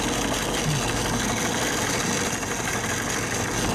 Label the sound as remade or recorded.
recorded